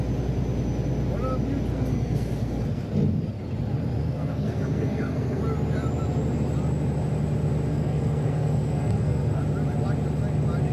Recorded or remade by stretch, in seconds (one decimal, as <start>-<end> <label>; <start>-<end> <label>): 0.0-1.7 recorded; 1.7-2.9 remade; 2.9-4.0 recorded; 4.0-5.4 remade; 5.4-7.7 recorded; 7.7-9.4 remade; 9.4-10.7 recorded